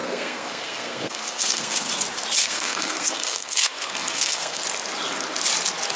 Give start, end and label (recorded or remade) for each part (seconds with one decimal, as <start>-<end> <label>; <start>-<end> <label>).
0.0-1.9 remade; 1.9-2.4 recorded; 2.4-4.6 remade; 4.6-6.0 recorded

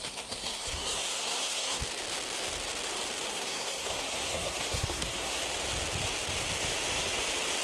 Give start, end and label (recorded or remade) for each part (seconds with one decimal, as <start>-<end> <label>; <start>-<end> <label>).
0.0-1.8 remade; 1.8-3.3 recorded; 3.3-5.4 remade; 5.4-7.6 recorded